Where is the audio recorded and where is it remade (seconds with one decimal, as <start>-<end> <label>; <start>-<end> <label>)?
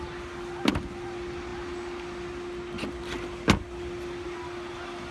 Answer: 0.0-5.1 recorded